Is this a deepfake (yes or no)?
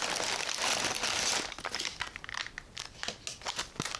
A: no